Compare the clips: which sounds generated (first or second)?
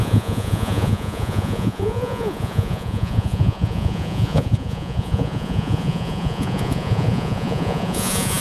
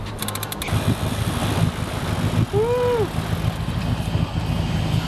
first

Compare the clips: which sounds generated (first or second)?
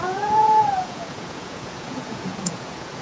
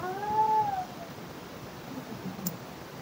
first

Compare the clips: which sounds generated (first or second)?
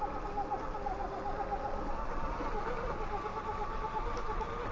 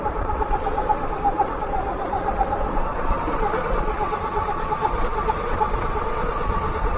second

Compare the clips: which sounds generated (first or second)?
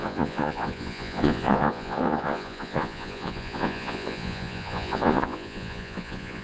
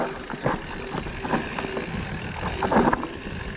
first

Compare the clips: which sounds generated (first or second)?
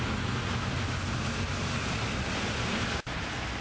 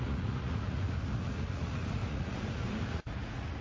second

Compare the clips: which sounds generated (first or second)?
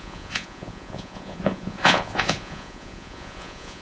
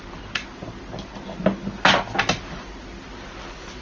first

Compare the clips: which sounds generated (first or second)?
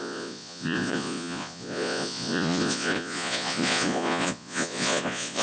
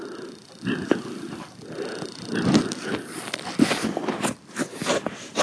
first